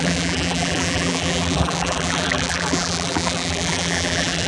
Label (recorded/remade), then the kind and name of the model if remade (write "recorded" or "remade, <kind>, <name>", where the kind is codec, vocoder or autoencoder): remade, vocoder, BigVGAN v2